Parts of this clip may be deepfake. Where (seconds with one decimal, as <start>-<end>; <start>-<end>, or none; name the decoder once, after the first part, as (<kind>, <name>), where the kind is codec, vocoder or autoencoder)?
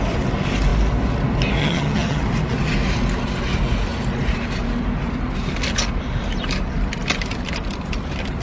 1.6-2.2 (vocoder, HiFi-GAN)